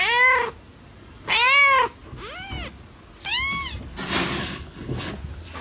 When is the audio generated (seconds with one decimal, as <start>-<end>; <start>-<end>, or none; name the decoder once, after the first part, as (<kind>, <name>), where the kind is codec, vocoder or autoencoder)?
4.4-5.1 (codec, HILCodec)